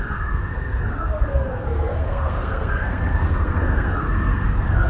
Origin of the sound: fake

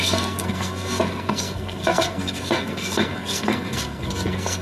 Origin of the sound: fake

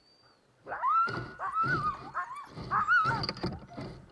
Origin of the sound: real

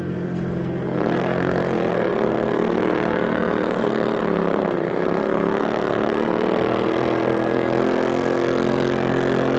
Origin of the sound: fake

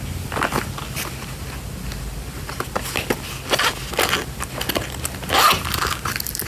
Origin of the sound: real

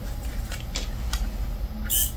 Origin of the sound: real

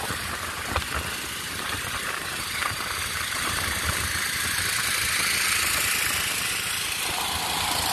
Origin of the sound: real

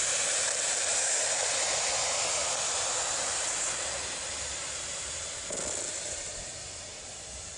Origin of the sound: real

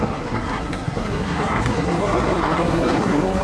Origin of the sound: fake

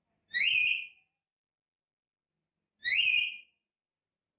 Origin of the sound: real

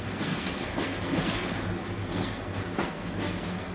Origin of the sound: fake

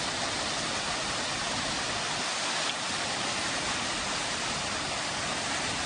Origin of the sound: real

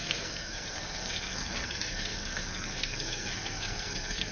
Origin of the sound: fake